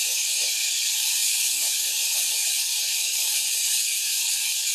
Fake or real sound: fake